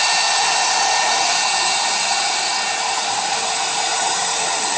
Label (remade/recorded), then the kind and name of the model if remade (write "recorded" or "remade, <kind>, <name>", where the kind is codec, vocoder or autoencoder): remade, vocoder, BigVGAN v2